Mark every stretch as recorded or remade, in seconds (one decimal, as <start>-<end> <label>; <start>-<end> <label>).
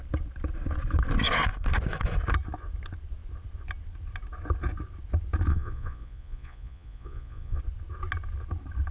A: 0.0-5.5 recorded; 5.5-7.6 remade; 7.6-8.9 recorded